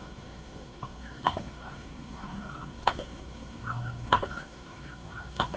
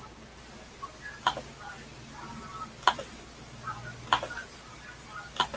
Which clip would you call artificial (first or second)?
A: first